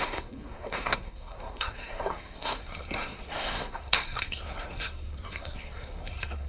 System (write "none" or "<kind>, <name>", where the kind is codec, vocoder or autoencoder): codec, SNAC